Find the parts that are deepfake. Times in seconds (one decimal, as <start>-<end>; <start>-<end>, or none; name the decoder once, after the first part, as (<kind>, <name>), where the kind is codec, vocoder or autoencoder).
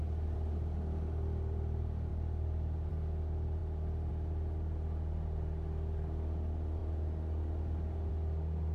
none